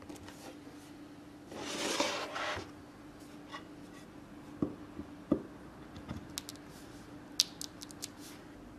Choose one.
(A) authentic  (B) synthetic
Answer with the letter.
A